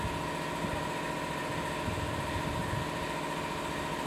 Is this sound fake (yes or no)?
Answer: no